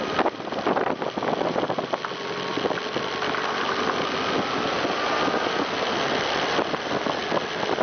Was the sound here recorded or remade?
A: recorded